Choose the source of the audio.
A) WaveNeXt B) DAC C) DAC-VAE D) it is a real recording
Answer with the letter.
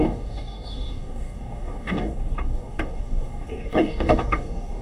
B